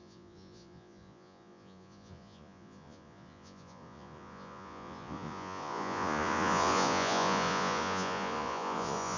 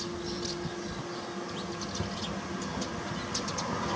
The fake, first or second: first